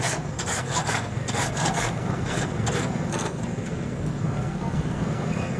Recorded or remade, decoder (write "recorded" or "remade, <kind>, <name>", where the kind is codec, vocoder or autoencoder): remade, codec, SNAC